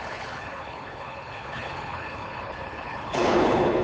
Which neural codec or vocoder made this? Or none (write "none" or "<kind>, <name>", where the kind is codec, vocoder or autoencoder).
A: codec, HILCodec